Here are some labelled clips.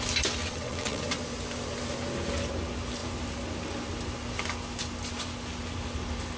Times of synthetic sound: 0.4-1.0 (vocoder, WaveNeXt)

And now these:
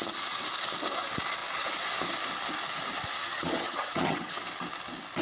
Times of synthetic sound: 3.2-4.4 (vocoder, HiFi-GAN)

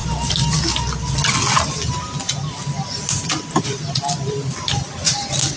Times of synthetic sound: none

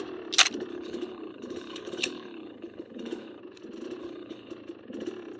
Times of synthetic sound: 0.7-3.4 (codec, HILCodec); 4.0-4.5